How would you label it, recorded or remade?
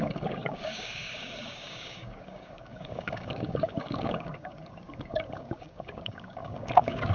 remade